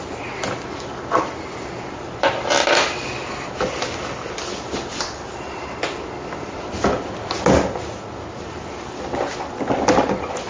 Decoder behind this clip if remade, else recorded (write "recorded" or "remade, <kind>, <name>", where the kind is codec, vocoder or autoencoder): recorded